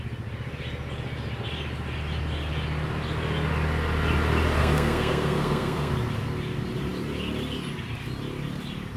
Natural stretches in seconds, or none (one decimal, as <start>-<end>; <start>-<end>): 0.0-4.6; 5.9-9.0